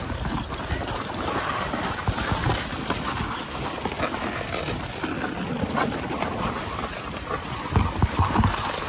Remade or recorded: recorded